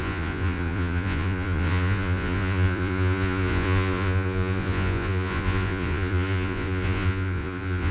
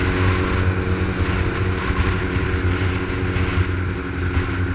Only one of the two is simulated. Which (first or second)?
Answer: first